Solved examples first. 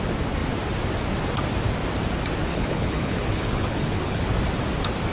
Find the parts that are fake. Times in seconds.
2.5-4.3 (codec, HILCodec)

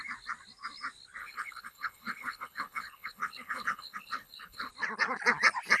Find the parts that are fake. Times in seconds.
1.2-4.7 (codec, HILCodec)

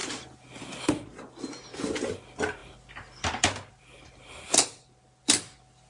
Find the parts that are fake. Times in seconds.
none

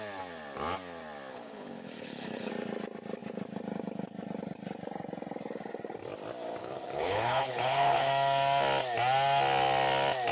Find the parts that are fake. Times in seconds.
1.3-2.5 (codec, HILCodec); 6.6-8.1

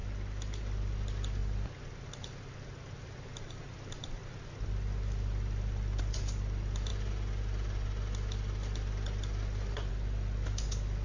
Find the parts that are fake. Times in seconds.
none

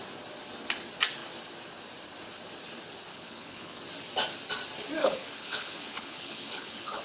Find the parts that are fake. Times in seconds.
3.1-3.8 (codec, HILCodec); 5.0-7.0

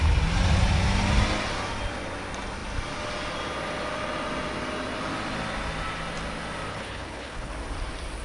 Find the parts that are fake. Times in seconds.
6.7-7.5 (codec, HILCodec)